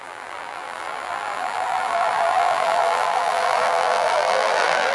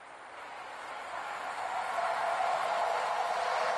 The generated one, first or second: first